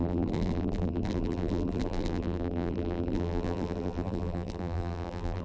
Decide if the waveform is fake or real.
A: fake